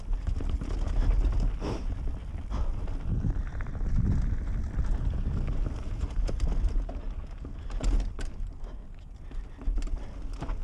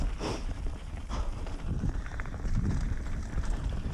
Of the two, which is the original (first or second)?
first